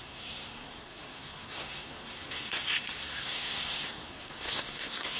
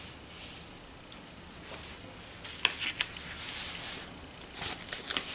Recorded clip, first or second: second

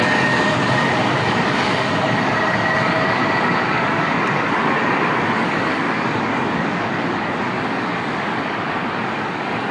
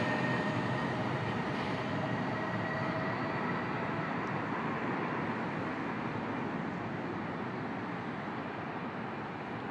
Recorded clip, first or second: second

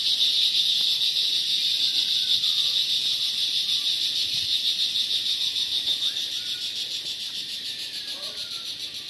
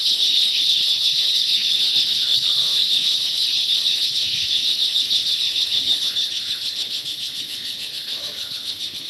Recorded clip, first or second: first